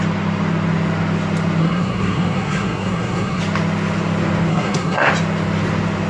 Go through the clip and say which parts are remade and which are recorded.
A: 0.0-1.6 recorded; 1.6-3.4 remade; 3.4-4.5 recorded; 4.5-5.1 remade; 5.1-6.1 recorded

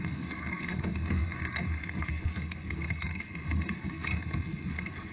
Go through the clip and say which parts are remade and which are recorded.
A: 0.0-5.1 remade

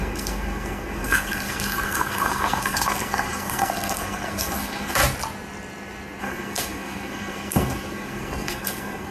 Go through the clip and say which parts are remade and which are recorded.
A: 0.0-5.0 remade; 5.0-6.2 recorded; 6.2-9.1 remade

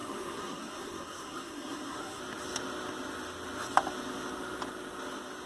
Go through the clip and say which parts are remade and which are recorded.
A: 0.0-2.2 remade; 2.2-5.5 recorded

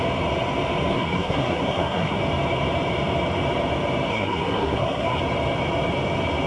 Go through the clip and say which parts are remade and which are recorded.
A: 0.0-0.9 recorded; 0.9-2.2 remade; 2.2-4.1 recorded; 4.1-5.2 remade; 5.2-6.5 recorded

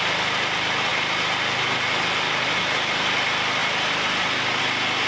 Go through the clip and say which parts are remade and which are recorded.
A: 0.0-5.1 recorded